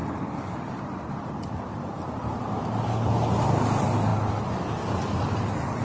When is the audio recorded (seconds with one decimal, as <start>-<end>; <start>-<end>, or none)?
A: 2.4-5.8